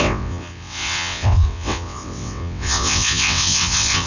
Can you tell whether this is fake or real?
fake